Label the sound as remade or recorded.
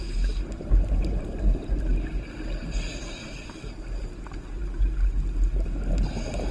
recorded